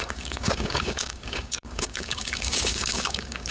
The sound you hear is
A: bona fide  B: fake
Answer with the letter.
B